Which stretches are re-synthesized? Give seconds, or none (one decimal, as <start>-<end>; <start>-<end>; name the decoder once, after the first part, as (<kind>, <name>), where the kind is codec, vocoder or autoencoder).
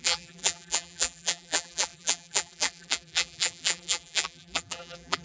0.0-5.2 (vocoder, BigVGAN v2)